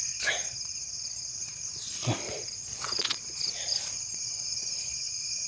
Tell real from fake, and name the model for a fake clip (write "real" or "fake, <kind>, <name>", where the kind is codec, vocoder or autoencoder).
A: fake, vocoder, Vocos